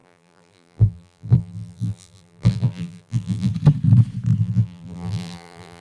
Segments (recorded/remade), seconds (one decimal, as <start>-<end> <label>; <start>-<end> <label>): 0.0-3.5 remade; 3.5-4.4 recorded; 4.4-5.8 remade